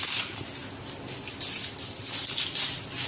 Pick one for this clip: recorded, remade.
recorded